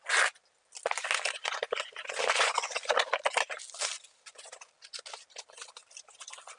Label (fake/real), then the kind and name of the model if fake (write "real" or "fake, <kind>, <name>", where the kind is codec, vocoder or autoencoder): real